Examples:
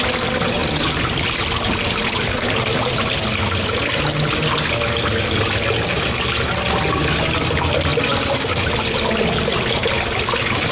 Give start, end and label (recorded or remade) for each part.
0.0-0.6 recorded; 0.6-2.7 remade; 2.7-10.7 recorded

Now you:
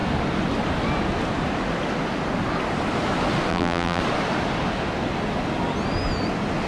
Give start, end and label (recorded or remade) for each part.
0.0-3.5 recorded; 3.5-4.0 remade; 4.0-6.7 recorded

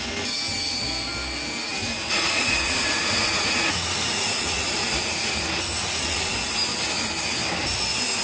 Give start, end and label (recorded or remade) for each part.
0.0-1.8 recorded; 1.8-5.3 remade; 5.3-5.8 recorded; 5.8-6.3 remade; 6.3-8.2 recorded

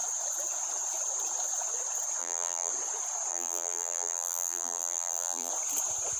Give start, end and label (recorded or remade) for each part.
0.0-2.2 recorded; 2.2-2.7 remade; 2.7-3.3 recorded; 3.3-5.5 remade; 5.5-6.2 recorded

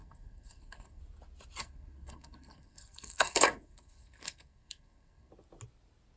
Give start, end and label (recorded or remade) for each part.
0.0-1.0 remade; 1.0-1.6 recorded; 1.6-5.3 remade; 5.3-6.2 recorded

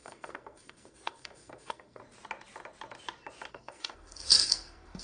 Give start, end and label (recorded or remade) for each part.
0.0-2.0 remade; 2.0-3.5 recorded; 3.5-5.0 remade

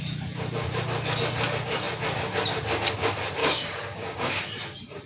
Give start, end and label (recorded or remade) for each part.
0.0-3.4 recorded; 3.4-4.4 remade; 4.4-5.1 recorded